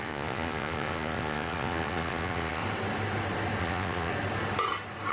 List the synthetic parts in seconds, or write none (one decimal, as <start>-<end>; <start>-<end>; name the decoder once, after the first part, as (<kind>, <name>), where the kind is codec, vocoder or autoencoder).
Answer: 0.0-2.6 (vocoder, Vocos); 3.6-4.1